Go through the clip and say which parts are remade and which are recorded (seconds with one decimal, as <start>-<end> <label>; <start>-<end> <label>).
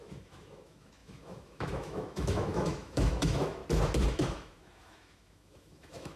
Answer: 0.0-3.6 remade; 3.6-4.1 recorded; 4.1-6.2 remade